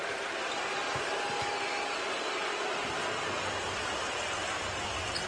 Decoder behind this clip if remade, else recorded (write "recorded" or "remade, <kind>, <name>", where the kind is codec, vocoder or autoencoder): recorded